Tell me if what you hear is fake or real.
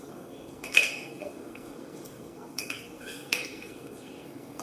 fake